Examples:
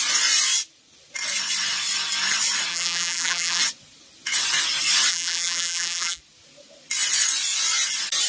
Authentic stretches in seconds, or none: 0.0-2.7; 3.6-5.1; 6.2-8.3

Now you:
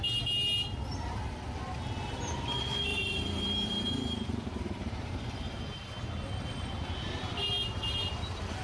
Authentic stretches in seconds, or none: 0.0-2.9; 5.6-8.6